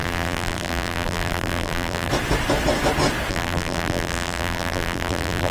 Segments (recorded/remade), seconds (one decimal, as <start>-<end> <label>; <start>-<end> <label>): 0.0-2.1 remade; 2.1-3.3 recorded; 3.3-5.5 remade